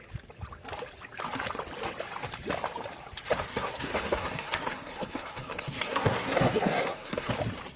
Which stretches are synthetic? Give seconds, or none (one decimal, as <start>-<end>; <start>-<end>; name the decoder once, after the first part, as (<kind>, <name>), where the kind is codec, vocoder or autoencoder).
3.5-7.3 (codec, SNAC)